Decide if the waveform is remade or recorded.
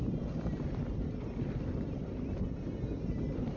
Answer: recorded